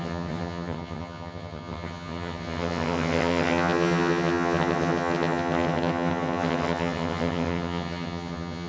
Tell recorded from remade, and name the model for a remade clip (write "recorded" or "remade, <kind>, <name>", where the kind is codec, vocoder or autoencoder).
remade, vocoder, HiFi-GAN